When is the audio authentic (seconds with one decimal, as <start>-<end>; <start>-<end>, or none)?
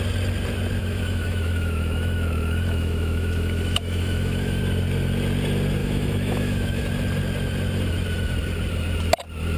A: 0.0-0.8; 4.6-5.8; 6.8-9.6